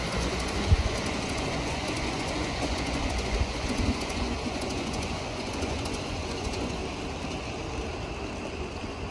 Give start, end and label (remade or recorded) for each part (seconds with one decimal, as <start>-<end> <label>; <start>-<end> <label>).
0.0-6.8 remade; 6.8-8.6 recorded; 8.6-9.1 remade